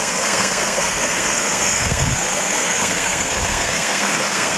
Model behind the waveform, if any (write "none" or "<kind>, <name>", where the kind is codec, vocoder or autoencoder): codec, SNAC